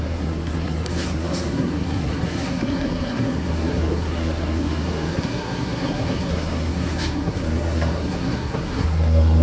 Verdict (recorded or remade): remade